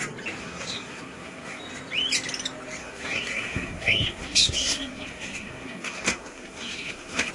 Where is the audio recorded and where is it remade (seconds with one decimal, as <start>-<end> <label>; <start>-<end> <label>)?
0.0-0.4 recorded; 0.4-1.6 remade; 1.6-2.8 recorded; 2.8-7.3 remade